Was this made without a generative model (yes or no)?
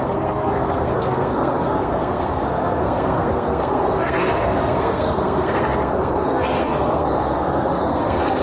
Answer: no